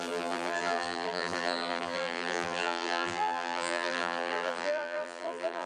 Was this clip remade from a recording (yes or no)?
yes